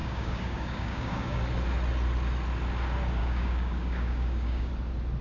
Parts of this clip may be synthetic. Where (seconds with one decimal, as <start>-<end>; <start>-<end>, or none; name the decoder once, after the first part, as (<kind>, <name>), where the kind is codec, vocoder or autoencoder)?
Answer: 0.0-1.4 (codec, DAC); 3.2-4.7